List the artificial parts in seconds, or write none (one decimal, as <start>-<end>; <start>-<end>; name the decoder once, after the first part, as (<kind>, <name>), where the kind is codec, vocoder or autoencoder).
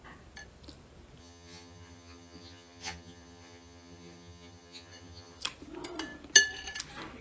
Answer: 1.2-5.4 (vocoder, HiFi-GAN)